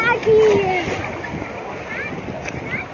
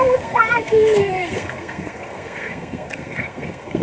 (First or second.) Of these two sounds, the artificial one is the second